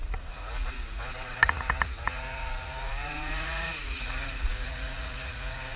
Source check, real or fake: fake